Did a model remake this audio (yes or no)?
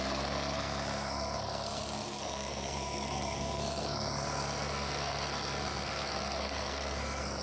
yes